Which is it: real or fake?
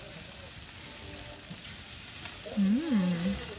real